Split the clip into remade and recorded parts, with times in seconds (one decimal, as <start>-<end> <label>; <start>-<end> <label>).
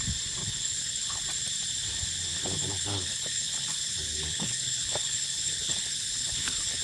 0.0-0.4 recorded; 0.4-1.2 remade; 1.2-2.3 recorded; 2.3-6.8 remade